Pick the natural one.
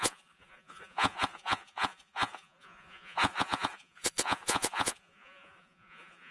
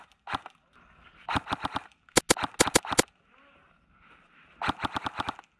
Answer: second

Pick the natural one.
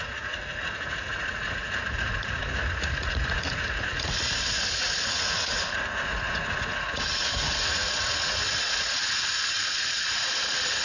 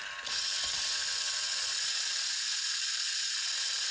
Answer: second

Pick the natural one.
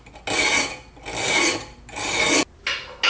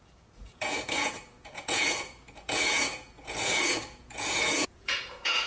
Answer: first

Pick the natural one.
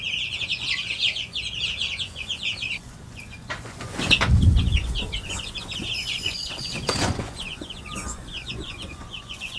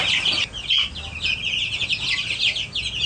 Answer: second